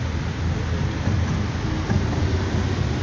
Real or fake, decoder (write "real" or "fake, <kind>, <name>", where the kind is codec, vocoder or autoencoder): real